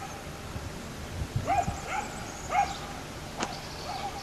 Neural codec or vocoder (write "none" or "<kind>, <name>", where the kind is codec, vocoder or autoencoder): none